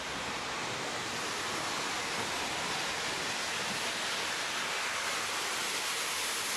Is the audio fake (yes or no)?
no